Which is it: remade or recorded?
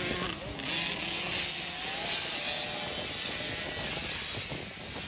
recorded